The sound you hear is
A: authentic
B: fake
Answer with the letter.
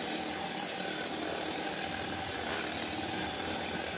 A